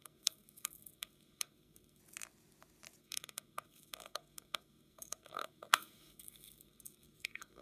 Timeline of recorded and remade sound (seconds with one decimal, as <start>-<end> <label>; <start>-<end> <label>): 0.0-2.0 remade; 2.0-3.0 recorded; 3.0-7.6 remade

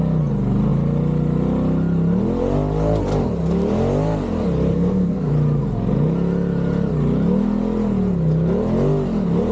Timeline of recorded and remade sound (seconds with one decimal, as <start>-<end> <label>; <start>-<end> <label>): 0.0-4.7 recorded; 4.7-5.3 remade; 5.3-9.5 recorded

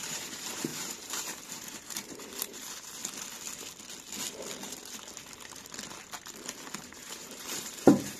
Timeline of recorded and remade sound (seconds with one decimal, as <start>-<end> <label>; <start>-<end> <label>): 0.0-3.0 remade; 3.0-6.8 recorded; 6.8-8.2 remade

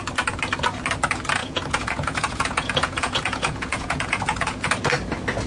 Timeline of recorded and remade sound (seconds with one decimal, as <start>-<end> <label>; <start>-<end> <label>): 0.0-1.4 recorded; 1.4-4.7 remade; 4.7-5.5 recorded